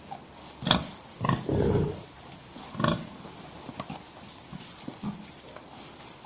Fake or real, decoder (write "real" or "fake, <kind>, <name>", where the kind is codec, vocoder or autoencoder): real